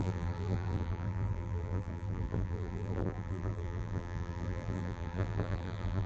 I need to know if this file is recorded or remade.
remade